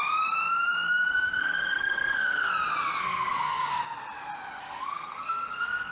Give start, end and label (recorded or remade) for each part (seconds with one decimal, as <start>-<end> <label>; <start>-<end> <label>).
0.0-1.3 recorded; 1.3-2.5 remade; 2.5-3.0 recorded; 3.0-3.8 remade; 3.8-4.6 recorded; 4.6-5.9 remade